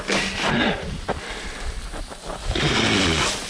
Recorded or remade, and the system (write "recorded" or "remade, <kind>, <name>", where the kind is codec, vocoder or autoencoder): recorded